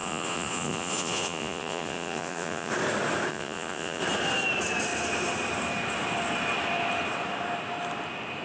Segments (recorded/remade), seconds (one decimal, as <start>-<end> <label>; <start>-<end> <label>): 0.0-2.7 remade; 2.7-3.3 recorded; 3.3-4.0 remade; 4.0-8.4 recorded